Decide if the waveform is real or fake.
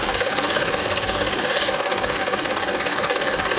fake